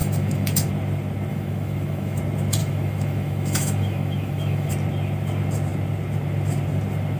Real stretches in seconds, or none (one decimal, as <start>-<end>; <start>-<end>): 0.7-1.3; 2.2-2.6; 4.7-7.2